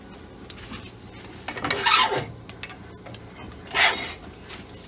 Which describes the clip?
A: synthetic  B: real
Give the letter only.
B